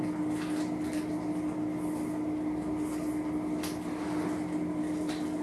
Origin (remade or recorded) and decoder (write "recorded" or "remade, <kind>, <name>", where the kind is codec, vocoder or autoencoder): recorded